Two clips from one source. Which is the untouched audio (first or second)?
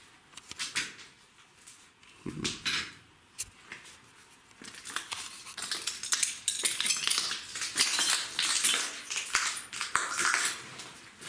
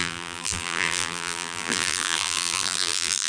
first